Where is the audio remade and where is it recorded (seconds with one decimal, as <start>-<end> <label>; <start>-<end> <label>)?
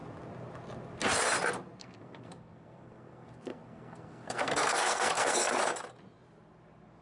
0.0-1.8 recorded; 1.8-5.6 remade; 5.6-7.0 recorded